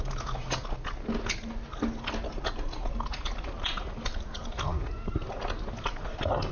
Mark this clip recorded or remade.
recorded